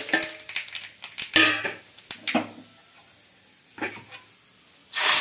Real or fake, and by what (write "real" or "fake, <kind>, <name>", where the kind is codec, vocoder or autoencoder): real